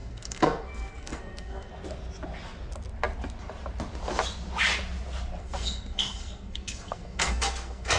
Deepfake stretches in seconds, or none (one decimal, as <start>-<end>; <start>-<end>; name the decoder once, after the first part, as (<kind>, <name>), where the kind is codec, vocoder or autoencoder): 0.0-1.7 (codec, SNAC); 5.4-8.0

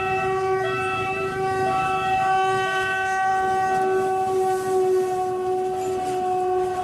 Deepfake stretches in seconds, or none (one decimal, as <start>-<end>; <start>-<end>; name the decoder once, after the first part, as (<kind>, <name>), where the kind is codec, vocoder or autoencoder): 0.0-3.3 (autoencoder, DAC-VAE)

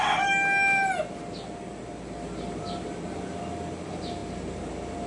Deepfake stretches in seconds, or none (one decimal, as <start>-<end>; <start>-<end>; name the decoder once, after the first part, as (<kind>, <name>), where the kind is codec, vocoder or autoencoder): none

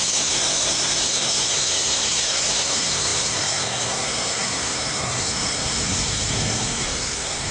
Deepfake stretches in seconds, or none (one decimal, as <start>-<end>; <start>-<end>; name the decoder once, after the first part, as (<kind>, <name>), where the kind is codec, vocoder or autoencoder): 0.0-7.5 (codec, SNAC)

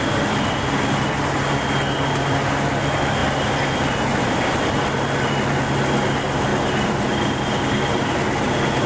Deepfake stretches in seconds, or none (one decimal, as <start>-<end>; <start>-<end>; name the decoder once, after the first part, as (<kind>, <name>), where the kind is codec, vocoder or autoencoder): none